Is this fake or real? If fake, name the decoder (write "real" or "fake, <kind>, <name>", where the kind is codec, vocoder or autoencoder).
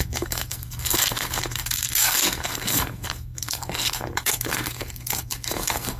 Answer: fake, codec, SNAC